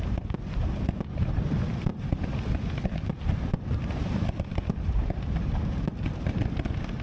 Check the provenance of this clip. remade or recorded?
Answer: remade